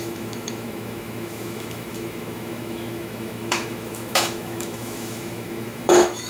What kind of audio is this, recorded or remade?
remade